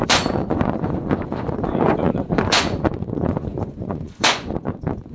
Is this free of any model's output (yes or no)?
no